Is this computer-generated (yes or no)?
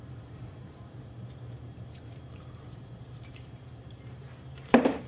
yes